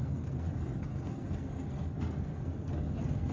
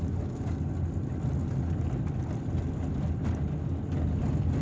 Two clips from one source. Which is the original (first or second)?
second